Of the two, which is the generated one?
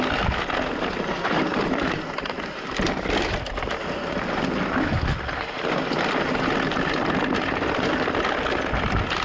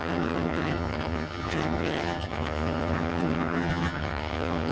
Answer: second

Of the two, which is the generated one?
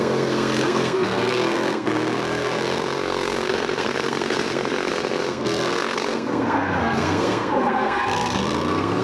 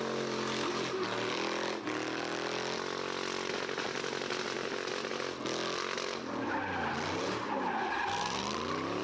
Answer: first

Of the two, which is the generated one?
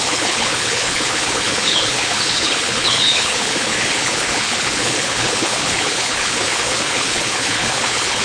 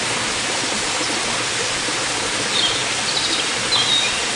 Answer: first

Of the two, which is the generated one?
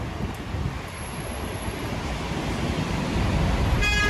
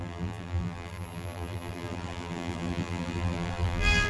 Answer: second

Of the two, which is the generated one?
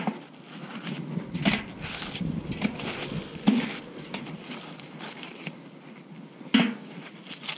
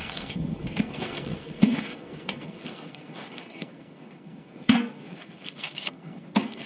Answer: second